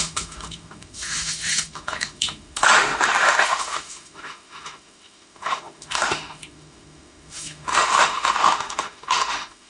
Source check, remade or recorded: remade